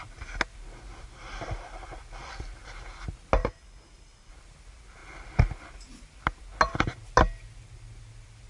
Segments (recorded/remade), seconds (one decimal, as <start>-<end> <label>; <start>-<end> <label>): 0.0-3.4 recorded; 3.4-4.3 remade; 4.3-8.5 recorded